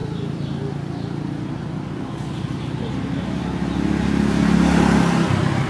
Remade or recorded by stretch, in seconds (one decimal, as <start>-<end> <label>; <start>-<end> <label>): 0.0-5.7 recorded